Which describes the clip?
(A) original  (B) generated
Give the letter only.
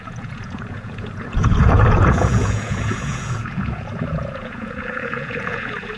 B